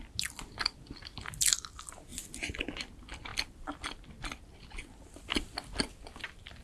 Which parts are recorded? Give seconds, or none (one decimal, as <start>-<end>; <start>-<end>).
0.0-2.1; 2.6-3.3; 4.0-6.6